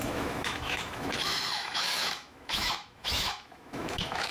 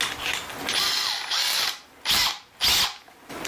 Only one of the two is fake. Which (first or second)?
first